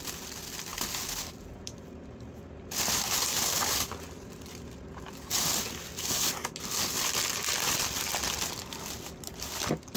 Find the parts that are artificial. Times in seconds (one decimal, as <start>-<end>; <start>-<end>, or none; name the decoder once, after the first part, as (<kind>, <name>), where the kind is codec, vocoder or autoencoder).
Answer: none